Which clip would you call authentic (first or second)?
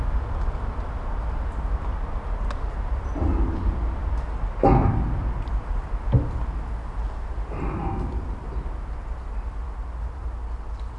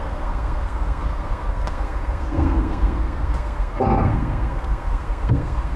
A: first